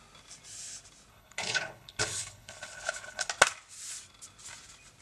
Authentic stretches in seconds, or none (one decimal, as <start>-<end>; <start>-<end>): 0.0-1.1; 3.3-5.0